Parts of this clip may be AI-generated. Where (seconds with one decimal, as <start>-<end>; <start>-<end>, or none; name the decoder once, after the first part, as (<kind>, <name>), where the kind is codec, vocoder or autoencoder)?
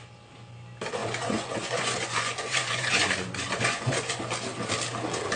1.0-4.2 (vocoder, Vocos)